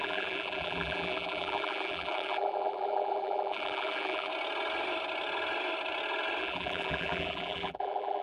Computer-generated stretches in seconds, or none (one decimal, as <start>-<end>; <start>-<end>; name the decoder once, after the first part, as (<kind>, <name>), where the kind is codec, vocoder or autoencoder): 0.0-4.3 (vocoder, BigVGAN v2); 6.4-8.2